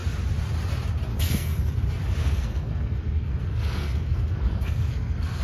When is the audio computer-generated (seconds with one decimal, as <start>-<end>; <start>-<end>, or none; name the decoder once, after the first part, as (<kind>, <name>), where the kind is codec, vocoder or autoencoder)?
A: 1.1-1.7 (codec, SNAC); 2.2-5.4